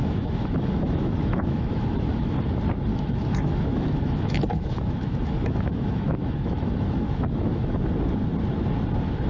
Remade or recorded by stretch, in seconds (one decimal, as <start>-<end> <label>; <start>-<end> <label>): 0.0-2.3 remade; 2.3-2.9 recorded; 2.9-7.8 remade; 7.8-9.3 recorded